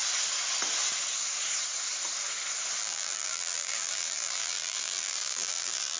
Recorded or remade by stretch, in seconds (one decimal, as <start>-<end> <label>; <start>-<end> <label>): 0.0-2.8 recorded; 2.8-6.0 remade